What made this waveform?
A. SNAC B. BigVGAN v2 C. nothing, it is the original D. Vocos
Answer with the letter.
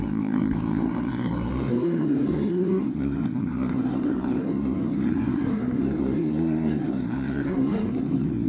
A